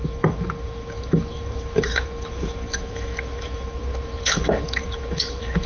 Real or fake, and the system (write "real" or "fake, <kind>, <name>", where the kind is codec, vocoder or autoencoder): fake, autoencoder, DAC-VAE